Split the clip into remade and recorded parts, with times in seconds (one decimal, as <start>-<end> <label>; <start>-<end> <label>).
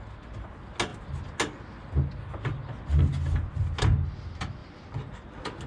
0.0-4.6 recorded; 4.6-5.3 remade; 5.3-5.7 recorded